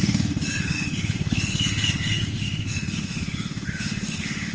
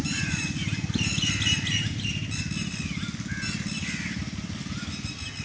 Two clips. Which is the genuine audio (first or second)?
second